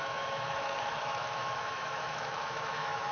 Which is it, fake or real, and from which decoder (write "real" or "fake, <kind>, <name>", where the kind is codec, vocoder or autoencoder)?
fake, autoencoder, DAC-VAE